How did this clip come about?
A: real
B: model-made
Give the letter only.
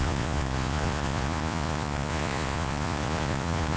B